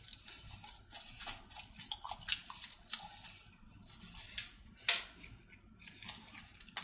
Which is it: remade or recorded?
recorded